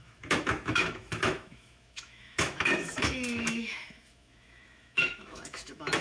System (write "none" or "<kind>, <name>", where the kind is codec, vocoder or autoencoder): autoencoder, DAC-VAE